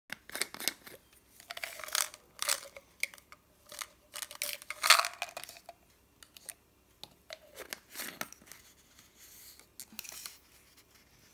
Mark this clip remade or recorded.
recorded